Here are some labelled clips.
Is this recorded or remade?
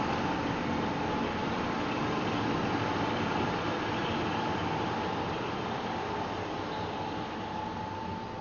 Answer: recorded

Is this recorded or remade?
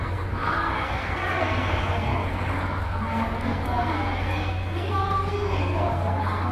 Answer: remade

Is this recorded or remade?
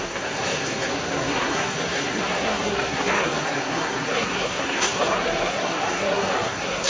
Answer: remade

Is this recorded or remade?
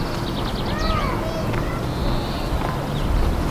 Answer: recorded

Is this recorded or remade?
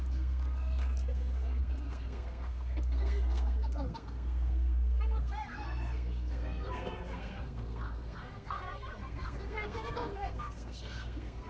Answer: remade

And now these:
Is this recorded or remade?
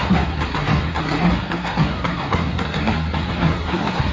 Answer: remade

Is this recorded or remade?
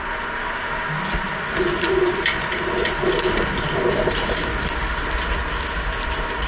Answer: recorded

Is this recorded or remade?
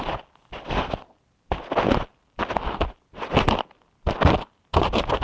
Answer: recorded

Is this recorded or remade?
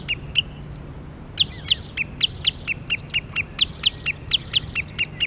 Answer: recorded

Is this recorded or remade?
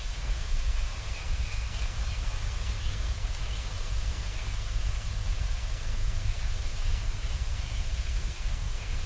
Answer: remade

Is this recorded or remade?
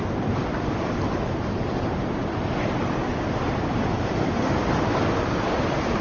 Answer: recorded